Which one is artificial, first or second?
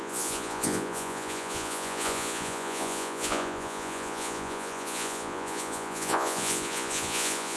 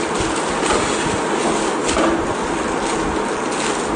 first